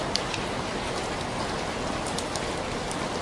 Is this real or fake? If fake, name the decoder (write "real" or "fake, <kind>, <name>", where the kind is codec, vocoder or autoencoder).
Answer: real